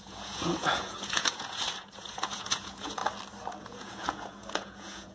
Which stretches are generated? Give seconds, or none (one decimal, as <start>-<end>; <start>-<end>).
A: 0.0-3.0; 3.6-5.1